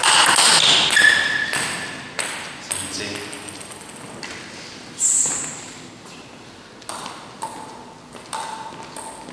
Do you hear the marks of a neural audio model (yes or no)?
no